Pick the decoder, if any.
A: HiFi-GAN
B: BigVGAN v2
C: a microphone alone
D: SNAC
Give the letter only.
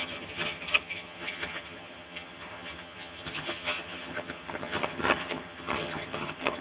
A